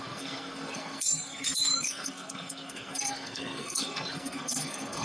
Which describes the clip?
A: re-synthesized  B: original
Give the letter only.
A